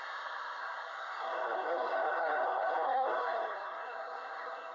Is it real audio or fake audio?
fake